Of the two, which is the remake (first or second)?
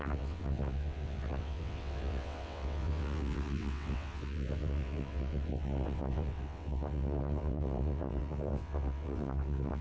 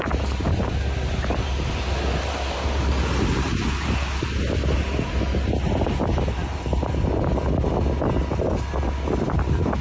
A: first